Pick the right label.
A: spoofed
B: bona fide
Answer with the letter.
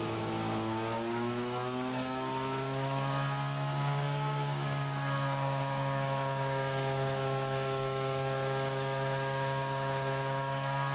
A